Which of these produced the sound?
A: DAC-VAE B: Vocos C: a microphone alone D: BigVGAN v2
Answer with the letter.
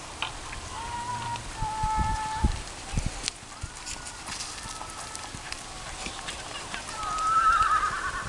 D